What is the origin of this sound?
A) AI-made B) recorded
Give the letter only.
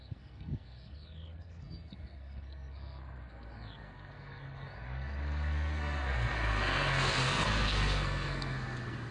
A